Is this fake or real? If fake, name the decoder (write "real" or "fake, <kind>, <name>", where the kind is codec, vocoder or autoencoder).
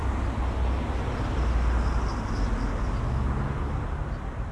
real